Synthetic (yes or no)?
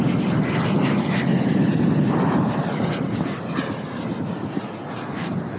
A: no